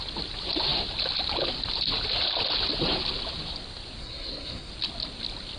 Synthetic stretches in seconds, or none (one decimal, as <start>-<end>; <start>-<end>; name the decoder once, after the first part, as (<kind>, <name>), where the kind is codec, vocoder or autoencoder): 4.0-4.7 (codec, SNAC)